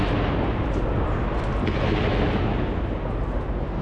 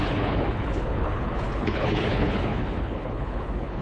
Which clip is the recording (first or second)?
first